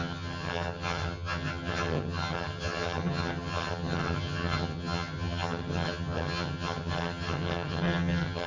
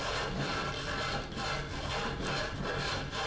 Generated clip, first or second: first